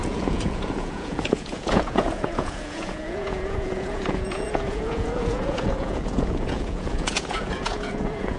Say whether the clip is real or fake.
fake